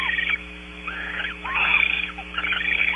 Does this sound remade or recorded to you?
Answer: remade